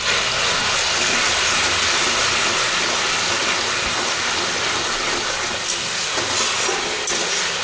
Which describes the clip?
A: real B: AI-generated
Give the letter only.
A